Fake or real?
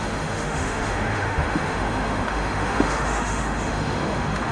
fake